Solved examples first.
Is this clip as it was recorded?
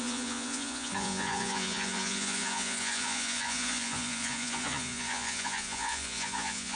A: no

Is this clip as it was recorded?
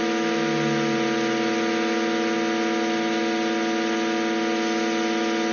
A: yes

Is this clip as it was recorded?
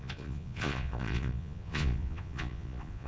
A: no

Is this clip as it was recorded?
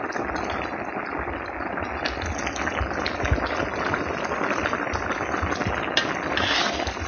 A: yes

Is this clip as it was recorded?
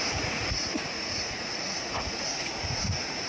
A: no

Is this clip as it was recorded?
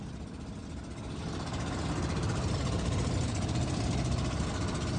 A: yes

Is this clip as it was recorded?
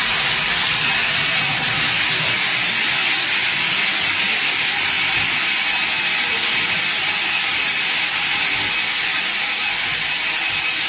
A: yes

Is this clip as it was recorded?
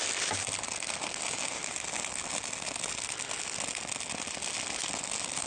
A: yes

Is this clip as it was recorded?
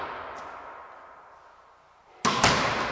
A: yes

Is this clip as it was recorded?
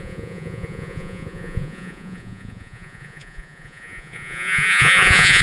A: no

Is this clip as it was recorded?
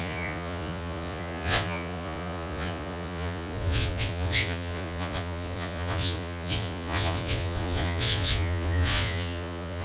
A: no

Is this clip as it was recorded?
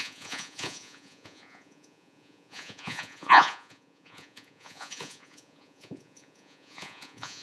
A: no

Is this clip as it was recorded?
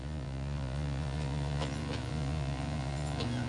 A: no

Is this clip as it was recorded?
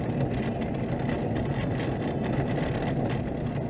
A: yes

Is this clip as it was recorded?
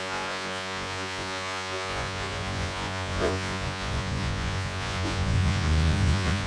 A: no